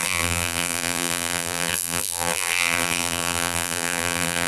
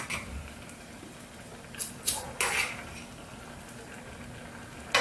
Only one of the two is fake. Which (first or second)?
first